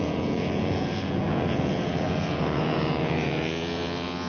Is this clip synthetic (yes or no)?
yes